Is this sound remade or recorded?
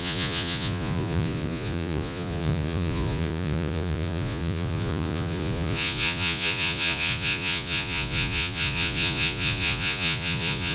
remade